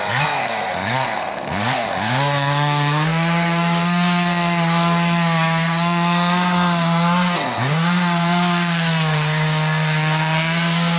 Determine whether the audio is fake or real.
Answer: fake